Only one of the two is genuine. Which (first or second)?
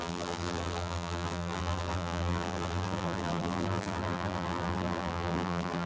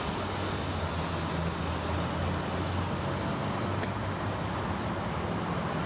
second